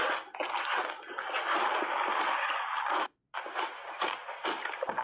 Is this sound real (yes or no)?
yes